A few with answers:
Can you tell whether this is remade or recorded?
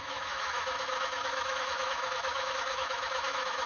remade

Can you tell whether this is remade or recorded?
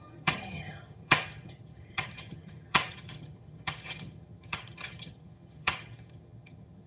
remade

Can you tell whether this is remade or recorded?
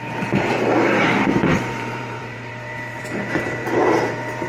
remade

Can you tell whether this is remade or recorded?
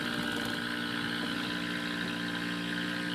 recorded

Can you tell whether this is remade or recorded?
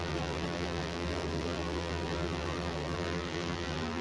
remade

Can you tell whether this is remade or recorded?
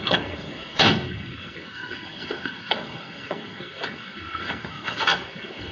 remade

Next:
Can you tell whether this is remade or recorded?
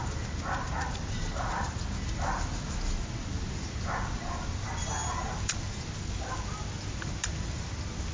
recorded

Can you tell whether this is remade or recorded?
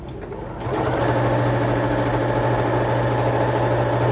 recorded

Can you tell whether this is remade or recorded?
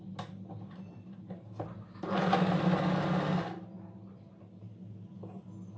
recorded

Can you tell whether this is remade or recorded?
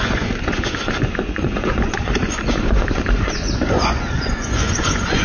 remade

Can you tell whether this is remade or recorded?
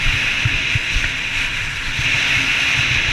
recorded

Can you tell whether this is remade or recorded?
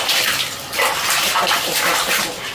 recorded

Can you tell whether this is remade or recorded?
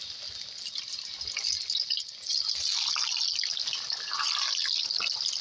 recorded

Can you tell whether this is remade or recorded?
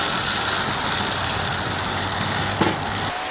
recorded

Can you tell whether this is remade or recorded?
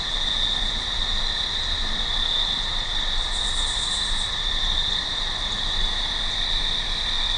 recorded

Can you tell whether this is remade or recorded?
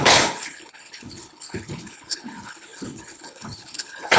remade